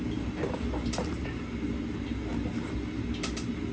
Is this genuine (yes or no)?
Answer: yes